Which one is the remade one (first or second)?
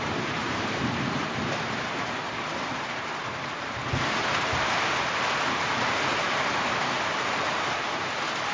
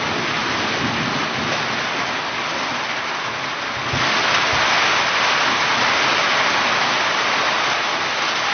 first